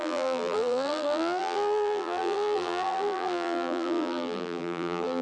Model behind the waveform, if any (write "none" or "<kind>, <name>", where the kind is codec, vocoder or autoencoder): vocoder, BigVGAN v2